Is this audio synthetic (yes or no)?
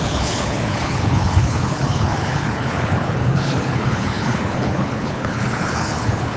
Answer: yes